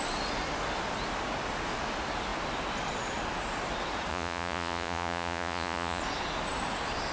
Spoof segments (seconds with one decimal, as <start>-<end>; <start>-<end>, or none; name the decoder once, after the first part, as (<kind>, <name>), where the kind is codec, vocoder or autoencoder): 4.1-6.0 (vocoder, Vocos)